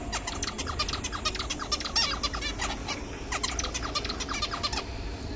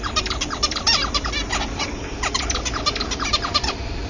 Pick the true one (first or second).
first